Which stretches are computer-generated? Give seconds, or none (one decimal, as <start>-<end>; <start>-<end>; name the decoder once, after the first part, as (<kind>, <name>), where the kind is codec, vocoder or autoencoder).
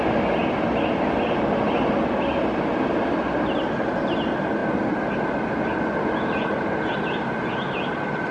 none